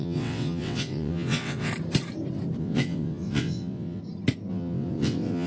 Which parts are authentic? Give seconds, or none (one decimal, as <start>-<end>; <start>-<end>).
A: 1.7-2.6; 4.0-4.5